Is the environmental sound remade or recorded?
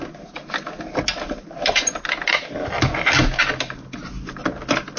recorded